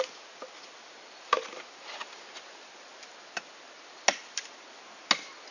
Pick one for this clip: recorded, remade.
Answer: recorded